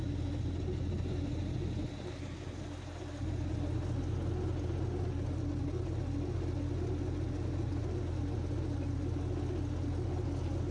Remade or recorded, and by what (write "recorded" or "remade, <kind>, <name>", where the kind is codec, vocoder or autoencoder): recorded